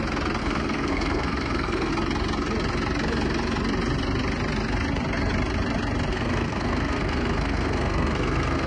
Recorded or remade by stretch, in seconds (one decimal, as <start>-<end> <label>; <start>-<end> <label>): 0.0-0.4 recorded; 0.4-1.9 remade; 1.9-6.1 recorded; 6.1-8.7 remade